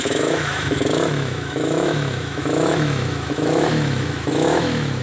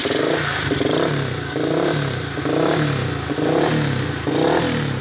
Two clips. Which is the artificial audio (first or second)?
first